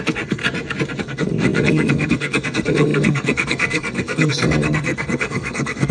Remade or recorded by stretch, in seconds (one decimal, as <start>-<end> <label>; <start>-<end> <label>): 0.0-0.4 remade; 0.4-1.0 recorded; 1.0-5.9 remade